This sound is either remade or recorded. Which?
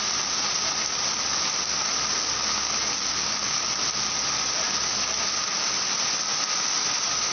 recorded